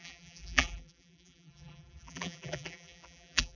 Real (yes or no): no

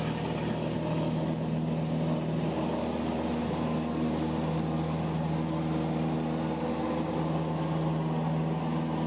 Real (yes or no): yes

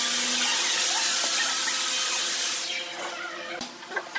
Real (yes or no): yes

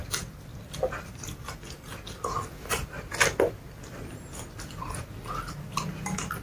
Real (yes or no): yes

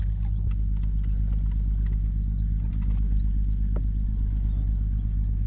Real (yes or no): yes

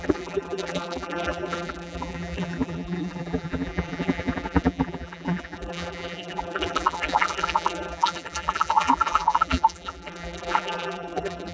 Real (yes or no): no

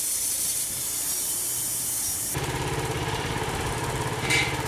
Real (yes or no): no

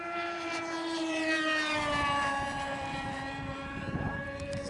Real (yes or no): no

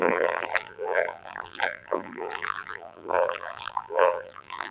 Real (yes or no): no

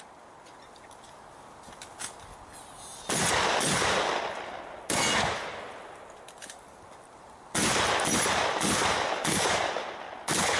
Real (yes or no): yes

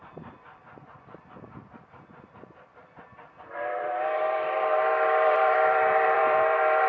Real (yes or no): no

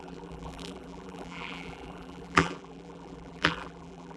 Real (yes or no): no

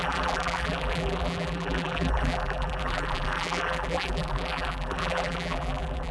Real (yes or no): no